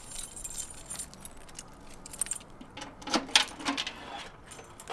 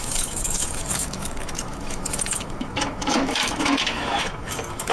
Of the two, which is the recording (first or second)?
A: first